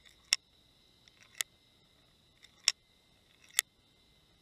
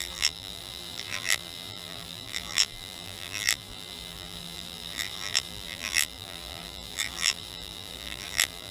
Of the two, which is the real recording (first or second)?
first